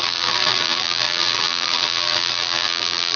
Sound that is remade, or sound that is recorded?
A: remade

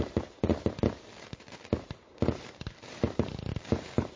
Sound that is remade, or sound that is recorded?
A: remade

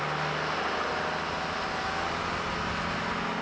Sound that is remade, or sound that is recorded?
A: recorded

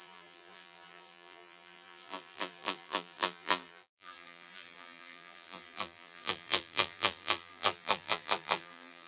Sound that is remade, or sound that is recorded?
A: remade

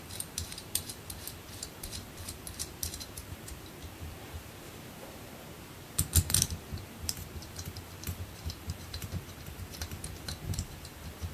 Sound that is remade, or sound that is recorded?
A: remade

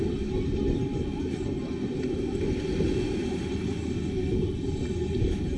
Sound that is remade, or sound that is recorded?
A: recorded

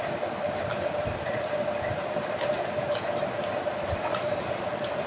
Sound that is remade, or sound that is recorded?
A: remade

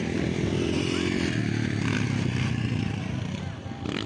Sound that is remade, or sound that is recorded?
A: remade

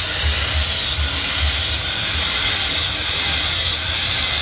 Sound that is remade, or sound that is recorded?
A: recorded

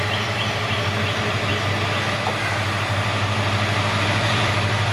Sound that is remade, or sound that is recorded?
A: recorded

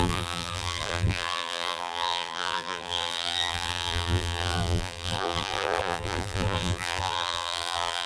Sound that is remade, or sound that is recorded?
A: remade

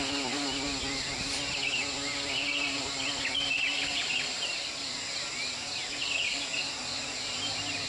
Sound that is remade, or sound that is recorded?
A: recorded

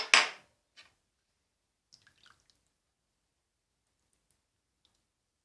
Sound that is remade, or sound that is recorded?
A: recorded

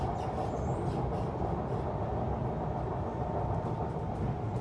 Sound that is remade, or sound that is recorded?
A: recorded